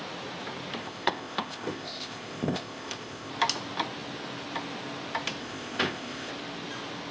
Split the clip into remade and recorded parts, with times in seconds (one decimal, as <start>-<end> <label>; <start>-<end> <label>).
0.0-0.8 recorded; 0.8-3.3 remade; 3.3-5.4 recorded; 5.4-6.3 remade; 6.3-7.1 recorded